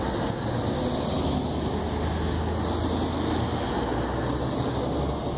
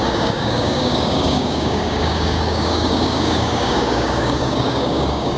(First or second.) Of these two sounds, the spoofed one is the second